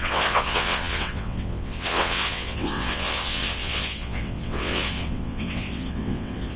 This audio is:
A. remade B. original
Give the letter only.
A